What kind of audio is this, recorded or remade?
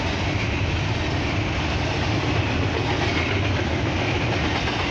recorded